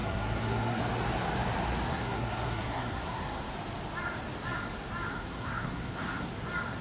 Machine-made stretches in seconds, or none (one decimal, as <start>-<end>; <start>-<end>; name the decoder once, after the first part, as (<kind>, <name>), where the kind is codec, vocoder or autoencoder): 0.0-0.8 (codec, SNAC); 1.9-3.5; 5.1-6.3